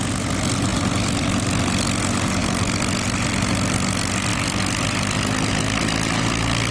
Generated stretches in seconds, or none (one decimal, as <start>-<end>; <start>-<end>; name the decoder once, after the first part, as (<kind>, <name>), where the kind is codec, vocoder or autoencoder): none